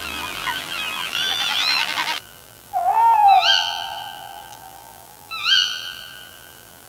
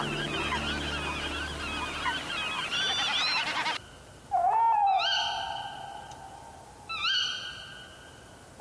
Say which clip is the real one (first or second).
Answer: second